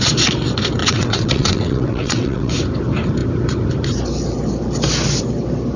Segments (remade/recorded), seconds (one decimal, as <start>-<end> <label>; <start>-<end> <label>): 0.0-0.8 recorded; 0.8-2.5 remade; 2.5-5.8 recorded